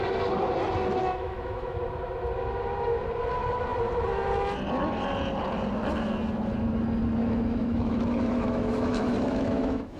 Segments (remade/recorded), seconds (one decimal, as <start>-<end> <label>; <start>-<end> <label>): 0.0-1.0 recorded; 1.0-1.8 remade; 1.8-7.2 recorded; 7.2-10.0 remade